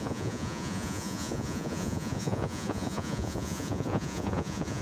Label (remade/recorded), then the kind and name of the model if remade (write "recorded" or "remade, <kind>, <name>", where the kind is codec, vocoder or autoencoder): remade, vocoder, Vocos